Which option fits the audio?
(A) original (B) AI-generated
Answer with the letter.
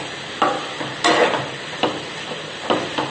A